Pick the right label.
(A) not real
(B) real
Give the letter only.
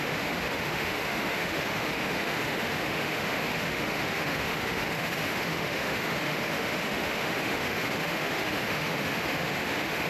A